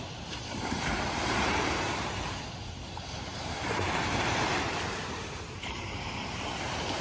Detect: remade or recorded remade